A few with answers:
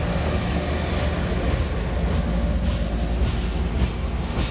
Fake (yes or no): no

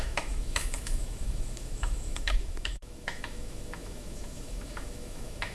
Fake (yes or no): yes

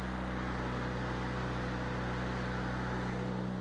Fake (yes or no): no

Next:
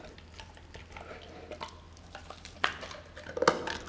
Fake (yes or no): no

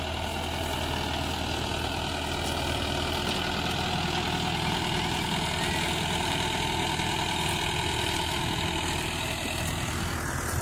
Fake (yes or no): no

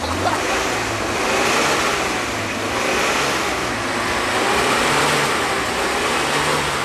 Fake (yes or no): no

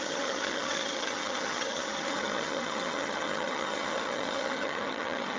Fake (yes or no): yes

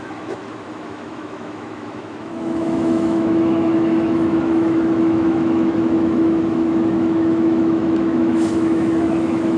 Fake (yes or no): yes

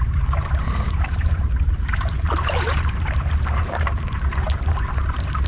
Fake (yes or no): yes